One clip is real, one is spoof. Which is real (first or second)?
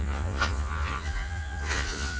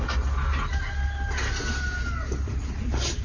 second